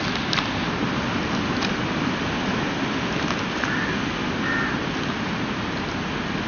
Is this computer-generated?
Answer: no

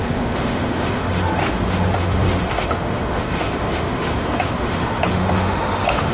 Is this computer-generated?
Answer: yes